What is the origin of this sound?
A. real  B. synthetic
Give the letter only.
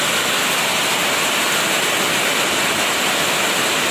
A